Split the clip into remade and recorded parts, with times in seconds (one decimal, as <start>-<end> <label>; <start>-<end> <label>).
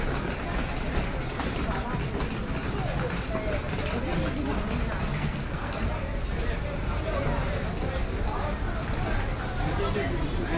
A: 0.0-5.1 recorded; 5.1-5.9 remade; 5.9-10.6 recorded